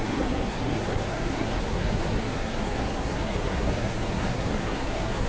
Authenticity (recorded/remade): remade